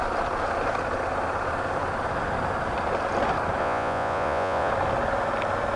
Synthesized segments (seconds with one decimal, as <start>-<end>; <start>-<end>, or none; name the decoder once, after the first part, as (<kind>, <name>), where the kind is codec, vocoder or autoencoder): 3.6-4.7 (vocoder, Vocos)